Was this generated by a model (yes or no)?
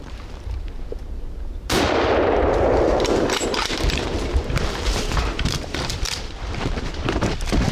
yes